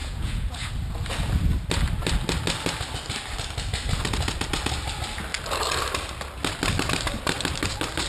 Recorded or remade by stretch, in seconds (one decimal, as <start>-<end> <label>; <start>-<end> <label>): 0.0-0.7 remade; 0.7-8.1 recorded